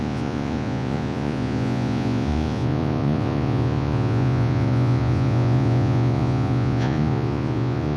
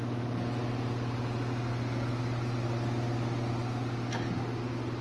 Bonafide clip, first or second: second